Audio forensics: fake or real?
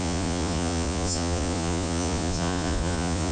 fake